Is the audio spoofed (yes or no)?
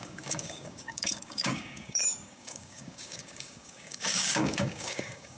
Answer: yes